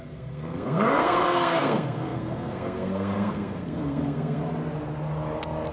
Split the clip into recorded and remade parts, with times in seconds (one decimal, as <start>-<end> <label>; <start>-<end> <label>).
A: 0.0-4.4 remade; 4.4-5.7 recorded